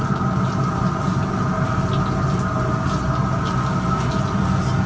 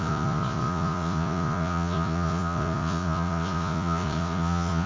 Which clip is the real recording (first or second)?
first